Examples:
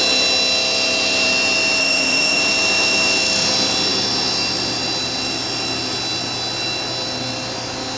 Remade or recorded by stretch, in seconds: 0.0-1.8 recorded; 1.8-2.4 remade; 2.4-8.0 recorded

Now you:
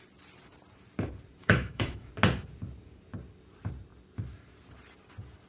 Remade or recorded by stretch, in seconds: 0.0-1.4 recorded; 1.4-2.1 remade; 2.1-5.5 recorded

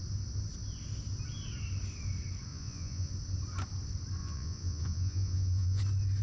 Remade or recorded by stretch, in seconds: 0.0-2.5 recorded; 2.5-3.1 remade; 3.1-4.2 recorded; 4.2-5.8 remade; 5.8-6.2 recorded

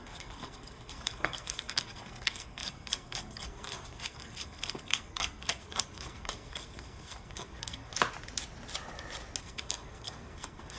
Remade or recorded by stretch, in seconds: 0.0-7.9 remade; 7.9-9.4 recorded; 9.4-10.8 remade

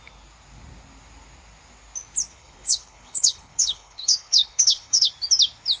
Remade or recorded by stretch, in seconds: 0.0-2.3 recorded; 2.3-5.1 remade; 5.1-5.8 recorded